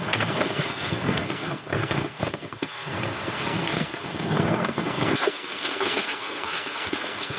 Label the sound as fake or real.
fake